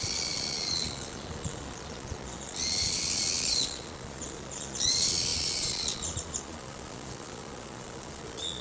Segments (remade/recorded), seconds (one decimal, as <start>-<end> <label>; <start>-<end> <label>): 0.0-8.6 remade